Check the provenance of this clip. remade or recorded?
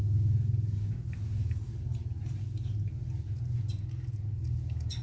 recorded